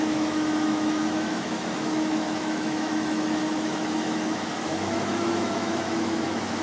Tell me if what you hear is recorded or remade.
remade